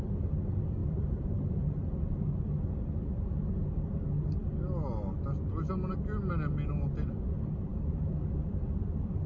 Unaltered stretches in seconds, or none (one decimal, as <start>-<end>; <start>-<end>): 0.0-0.8; 2.4-9.3